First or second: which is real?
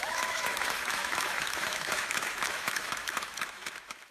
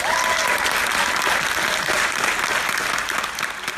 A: second